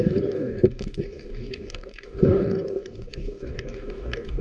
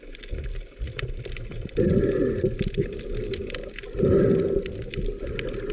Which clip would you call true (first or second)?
second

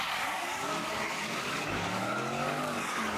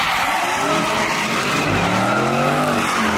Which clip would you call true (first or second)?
second